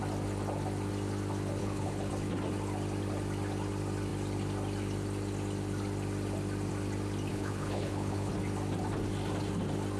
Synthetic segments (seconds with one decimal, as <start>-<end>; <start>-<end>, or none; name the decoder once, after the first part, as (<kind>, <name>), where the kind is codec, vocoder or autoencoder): 1.6-2.1 (codec, HILCodec); 7.3-8.3